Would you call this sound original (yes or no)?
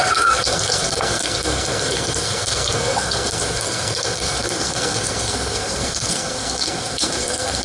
no